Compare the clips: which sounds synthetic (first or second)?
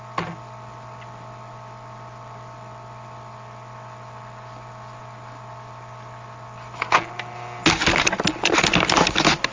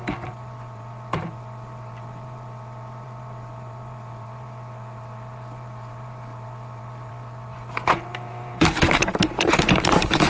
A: second